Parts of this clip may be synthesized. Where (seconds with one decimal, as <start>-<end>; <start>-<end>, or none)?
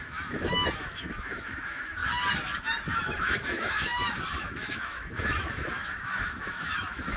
0.0-2.0; 2.9-7.2